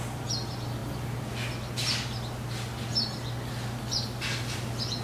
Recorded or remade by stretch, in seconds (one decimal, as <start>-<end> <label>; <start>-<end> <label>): 0.0-5.0 recorded